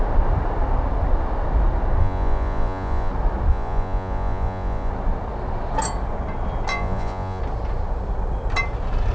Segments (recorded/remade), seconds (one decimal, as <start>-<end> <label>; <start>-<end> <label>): 0.0-2.0 recorded; 2.0-3.1 remade; 3.1-3.5 recorded; 3.5-4.9 remade; 4.9-6.7 recorded; 6.7-7.4 remade; 7.4-9.1 recorded